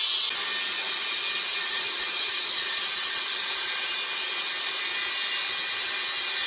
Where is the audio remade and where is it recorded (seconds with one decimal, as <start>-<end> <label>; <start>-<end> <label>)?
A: 0.0-1.5 recorded; 1.5-3.9 remade; 3.9-6.5 recorded